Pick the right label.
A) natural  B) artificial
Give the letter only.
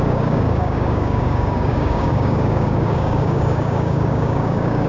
B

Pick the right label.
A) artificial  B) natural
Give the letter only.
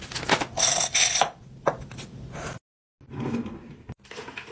B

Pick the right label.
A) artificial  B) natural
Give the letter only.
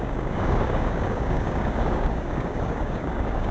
A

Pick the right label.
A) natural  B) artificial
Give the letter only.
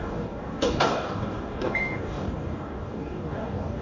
B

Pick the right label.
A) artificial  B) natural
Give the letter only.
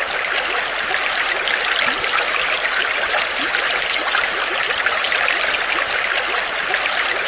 B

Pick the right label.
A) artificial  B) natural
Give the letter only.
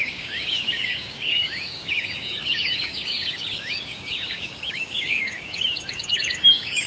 A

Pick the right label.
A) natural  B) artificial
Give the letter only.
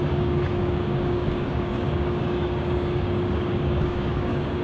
B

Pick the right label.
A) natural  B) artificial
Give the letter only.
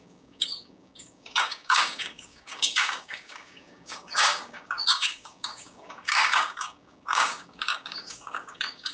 B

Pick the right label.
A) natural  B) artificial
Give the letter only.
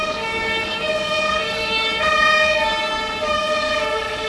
B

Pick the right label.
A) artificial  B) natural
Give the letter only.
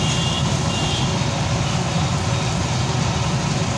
B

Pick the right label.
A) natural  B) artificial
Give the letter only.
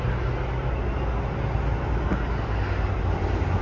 A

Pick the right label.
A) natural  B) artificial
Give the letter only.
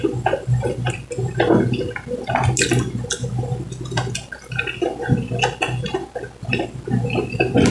A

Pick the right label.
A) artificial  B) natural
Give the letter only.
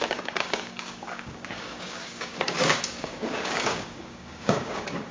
A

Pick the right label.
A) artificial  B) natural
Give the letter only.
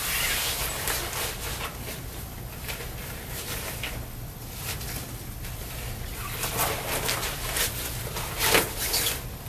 B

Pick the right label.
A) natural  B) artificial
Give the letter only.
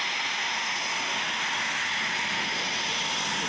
A